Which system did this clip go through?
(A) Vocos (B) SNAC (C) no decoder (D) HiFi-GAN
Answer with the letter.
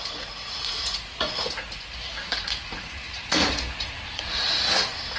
A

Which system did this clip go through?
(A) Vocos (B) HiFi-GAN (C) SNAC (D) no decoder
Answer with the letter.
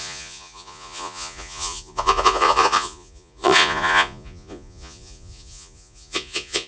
A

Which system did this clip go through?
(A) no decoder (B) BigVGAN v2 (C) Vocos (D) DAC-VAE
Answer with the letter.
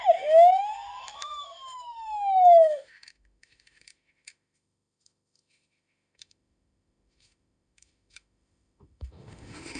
D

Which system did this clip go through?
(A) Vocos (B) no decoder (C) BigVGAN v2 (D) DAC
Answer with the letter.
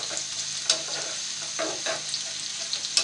B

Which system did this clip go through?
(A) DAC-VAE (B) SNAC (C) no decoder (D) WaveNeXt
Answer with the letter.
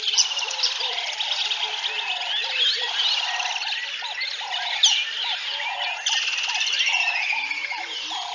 C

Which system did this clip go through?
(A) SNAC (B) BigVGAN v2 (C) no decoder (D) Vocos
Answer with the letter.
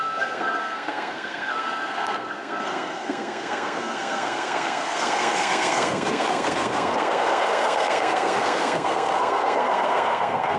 A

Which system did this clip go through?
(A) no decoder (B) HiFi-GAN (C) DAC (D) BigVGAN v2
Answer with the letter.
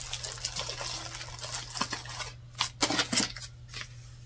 A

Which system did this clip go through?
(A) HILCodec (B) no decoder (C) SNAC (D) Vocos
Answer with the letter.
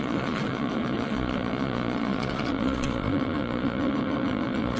D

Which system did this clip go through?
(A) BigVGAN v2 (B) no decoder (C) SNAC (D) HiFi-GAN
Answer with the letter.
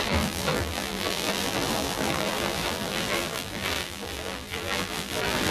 A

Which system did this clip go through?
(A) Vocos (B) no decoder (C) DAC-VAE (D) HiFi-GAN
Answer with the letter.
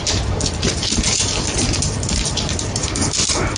B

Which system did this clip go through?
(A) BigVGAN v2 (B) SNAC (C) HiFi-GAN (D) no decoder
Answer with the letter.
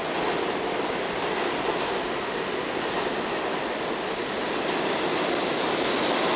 D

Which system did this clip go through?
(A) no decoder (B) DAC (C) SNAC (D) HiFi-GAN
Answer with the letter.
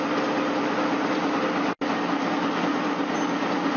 A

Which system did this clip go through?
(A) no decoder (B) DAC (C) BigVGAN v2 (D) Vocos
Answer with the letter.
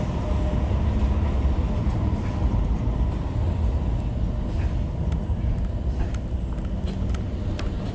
A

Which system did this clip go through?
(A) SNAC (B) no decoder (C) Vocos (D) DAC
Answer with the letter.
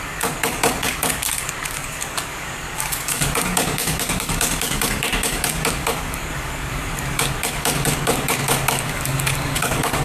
D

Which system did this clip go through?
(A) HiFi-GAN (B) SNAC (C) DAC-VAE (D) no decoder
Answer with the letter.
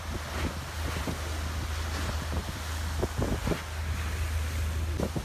D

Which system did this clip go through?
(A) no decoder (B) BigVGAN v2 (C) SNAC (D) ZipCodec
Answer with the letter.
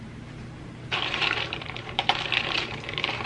B